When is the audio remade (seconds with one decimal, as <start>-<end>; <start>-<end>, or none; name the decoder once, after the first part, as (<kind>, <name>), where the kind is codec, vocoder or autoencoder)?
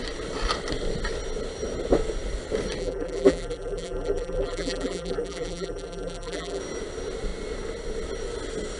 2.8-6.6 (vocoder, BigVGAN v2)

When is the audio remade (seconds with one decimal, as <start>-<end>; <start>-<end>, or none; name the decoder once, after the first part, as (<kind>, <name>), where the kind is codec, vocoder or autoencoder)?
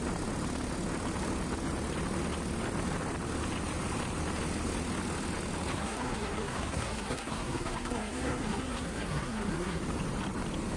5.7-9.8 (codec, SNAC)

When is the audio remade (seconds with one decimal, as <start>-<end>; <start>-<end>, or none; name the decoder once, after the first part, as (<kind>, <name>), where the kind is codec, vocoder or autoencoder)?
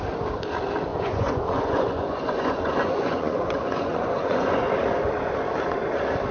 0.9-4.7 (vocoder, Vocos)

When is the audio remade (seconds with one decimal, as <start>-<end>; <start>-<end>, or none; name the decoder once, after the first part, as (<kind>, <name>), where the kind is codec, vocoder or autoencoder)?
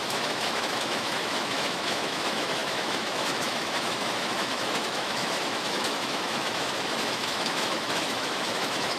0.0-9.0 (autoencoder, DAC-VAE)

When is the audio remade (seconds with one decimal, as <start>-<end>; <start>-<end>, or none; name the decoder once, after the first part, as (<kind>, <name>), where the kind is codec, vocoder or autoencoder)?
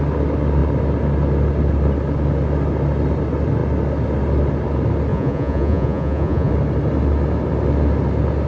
5.1-6.5 (vocoder, Vocos)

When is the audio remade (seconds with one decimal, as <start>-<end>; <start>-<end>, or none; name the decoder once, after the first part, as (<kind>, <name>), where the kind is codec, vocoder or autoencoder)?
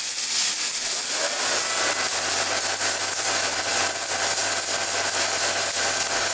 none